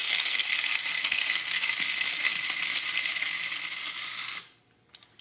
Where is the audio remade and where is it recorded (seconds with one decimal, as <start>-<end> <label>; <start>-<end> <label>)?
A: 0.0-0.6 remade; 0.6-1.0 recorded; 1.0-1.6 remade; 1.6-5.2 recorded